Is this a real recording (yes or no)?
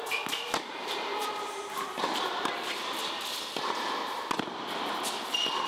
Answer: yes